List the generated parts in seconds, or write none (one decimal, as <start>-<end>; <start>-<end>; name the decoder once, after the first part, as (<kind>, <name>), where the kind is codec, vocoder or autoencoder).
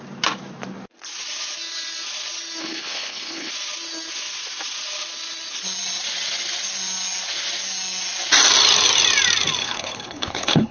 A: 2.6-3.5 (codec, HILCodec); 9.6-10.7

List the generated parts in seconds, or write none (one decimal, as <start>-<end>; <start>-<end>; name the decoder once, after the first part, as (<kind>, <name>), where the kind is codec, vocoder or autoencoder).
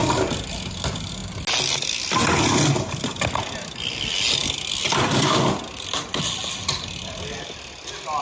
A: none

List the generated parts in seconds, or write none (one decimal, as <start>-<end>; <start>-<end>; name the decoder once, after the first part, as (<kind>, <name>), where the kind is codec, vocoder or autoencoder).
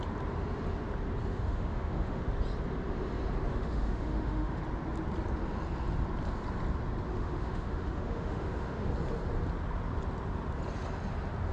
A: 1.3-2.2 (autoencoder, DAC-VAE); 3.5-4.6; 7.1-8.9